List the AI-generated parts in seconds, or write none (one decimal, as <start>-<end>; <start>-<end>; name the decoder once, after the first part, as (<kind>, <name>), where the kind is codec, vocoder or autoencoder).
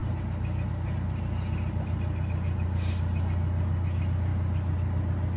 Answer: none